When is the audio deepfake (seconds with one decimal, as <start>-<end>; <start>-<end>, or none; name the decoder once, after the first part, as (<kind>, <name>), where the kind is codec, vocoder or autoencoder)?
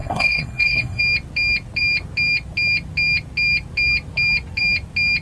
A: 0.0-1.0 (codec, SNAC)